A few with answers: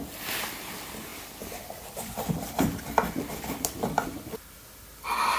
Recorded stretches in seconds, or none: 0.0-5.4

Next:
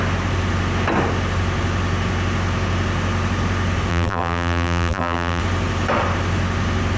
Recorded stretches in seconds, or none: 0.0-3.9; 5.4-7.0

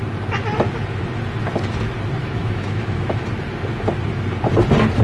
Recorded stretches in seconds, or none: 0.0-2.2; 3.2-5.0

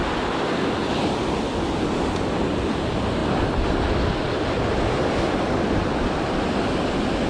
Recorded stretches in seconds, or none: 0.0-3.2

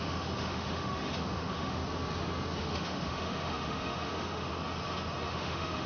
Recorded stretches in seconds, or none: 1.8-2.6; 4.5-5.3

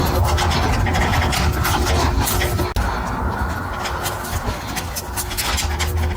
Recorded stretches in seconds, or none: 0.0-6.2